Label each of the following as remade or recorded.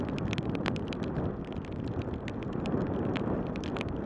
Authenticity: recorded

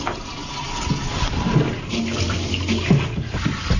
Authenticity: recorded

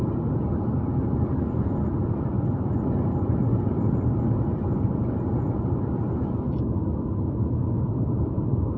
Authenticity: recorded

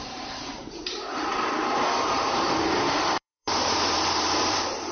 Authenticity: remade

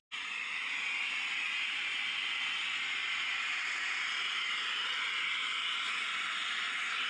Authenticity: recorded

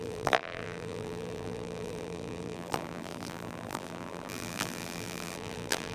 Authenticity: remade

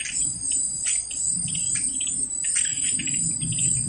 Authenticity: recorded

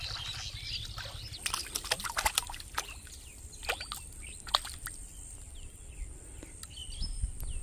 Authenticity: recorded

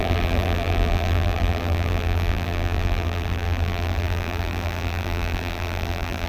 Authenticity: remade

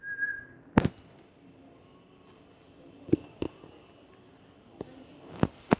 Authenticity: remade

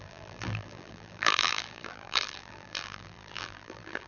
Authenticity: remade